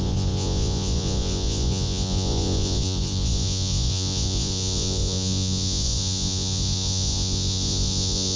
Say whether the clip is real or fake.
fake